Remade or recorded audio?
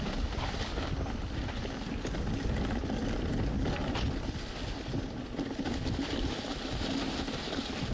recorded